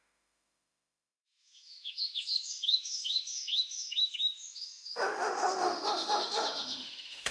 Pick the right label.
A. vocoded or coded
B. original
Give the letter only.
A